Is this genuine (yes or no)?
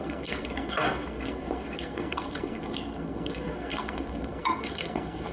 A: no